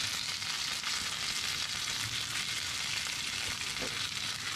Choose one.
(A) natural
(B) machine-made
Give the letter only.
A